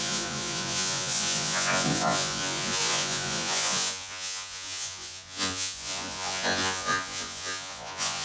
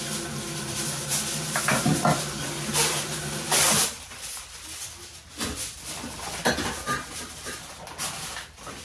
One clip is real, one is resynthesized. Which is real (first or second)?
second